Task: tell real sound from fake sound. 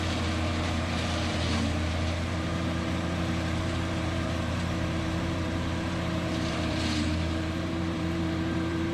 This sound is fake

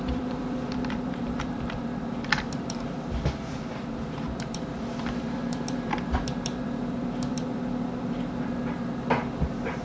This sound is fake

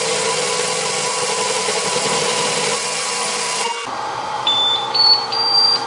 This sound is fake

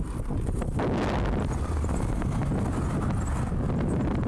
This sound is fake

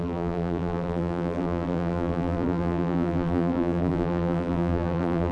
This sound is fake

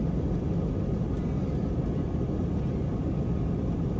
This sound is fake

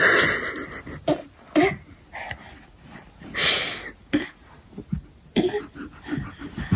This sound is real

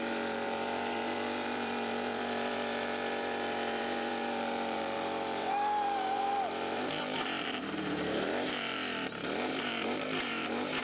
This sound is fake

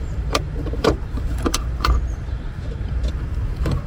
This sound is fake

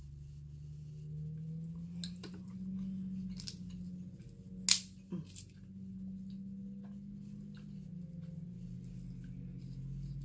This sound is real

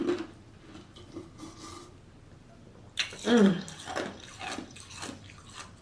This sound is real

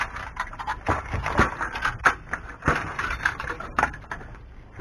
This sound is fake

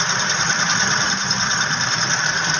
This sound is real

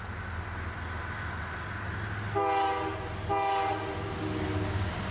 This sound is real